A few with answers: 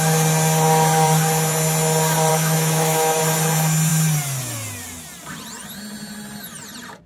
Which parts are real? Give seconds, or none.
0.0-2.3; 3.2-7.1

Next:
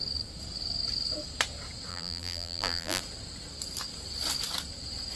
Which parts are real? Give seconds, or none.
0.0-1.9; 3.0-5.2

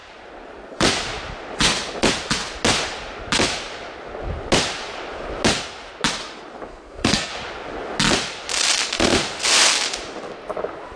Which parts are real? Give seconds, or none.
0.0-6.7; 7.3-11.0

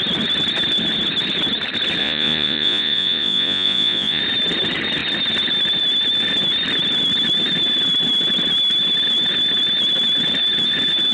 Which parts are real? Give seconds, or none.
0.0-2.0; 4.2-11.1

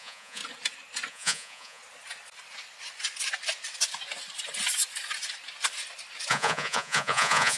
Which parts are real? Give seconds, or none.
0.4-1.1; 1.8-6.3

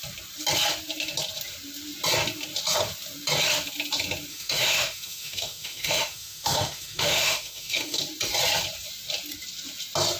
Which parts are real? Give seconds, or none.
0.0-4.3; 8.0-10.2

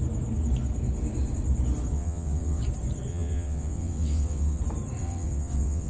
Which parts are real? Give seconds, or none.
0.0-1.9; 2.6-3.1; 4.6-5.0

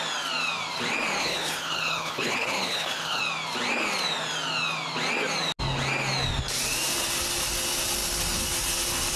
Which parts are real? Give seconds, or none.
0.0-1.2; 3.2-9.2